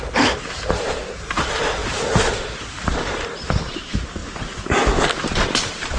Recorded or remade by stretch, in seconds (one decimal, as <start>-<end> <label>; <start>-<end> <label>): 0.0-4.2 remade; 4.2-5.0 recorded; 5.0-6.0 remade